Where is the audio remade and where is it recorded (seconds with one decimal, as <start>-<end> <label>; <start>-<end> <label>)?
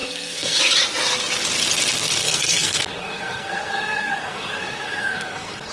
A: 0.0-0.6 remade; 0.6-2.2 recorded; 2.2-5.7 remade